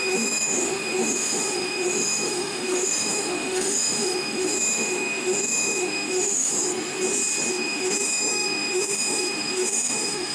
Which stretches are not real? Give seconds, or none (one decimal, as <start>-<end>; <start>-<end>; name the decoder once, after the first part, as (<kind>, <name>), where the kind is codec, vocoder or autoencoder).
0.0-6.5 (autoencoder, DAC-VAE); 7.5-10.3